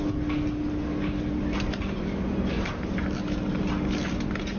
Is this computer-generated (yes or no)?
no